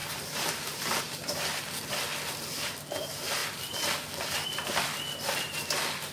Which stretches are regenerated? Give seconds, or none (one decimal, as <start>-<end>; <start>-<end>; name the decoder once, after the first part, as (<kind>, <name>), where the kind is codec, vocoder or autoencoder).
0.0-1.0 (vocoder, BigVGAN v2)

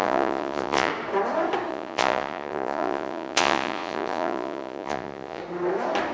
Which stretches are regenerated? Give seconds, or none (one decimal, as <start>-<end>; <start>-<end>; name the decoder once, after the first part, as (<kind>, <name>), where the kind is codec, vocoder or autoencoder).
0.0-0.9 (vocoder, Vocos); 1.7-5.4